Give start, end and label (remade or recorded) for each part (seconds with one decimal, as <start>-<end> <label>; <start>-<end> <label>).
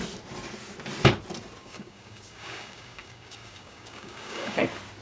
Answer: 0.0-1.6 recorded; 1.6-4.6 remade; 4.6-5.0 recorded